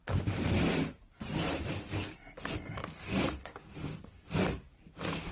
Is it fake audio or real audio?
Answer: real